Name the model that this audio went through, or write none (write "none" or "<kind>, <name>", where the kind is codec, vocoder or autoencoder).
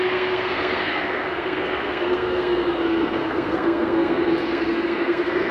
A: codec, SNAC